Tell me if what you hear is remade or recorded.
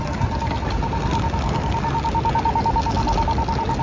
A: recorded